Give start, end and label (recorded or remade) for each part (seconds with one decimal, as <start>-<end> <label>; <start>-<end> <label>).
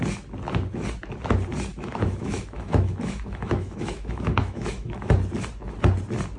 0.0-1.7 recorded; 1.7-5.1 remade; 5.1-6.4 recorded